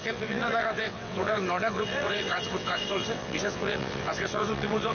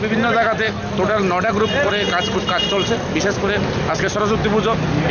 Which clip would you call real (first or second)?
second